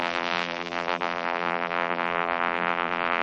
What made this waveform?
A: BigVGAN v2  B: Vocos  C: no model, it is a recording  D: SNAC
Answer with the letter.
A